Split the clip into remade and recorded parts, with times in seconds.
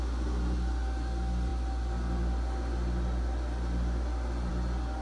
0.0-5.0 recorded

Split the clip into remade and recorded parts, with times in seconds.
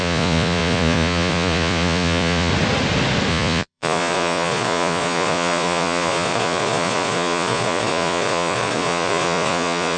0.0-2.5 remade; 2.5-3.3 recorded; 3.3-10.0 remade